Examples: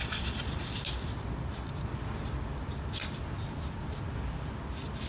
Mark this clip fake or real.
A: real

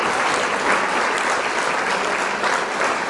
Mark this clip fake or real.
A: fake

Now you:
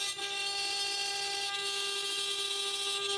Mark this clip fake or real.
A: real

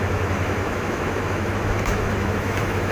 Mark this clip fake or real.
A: fake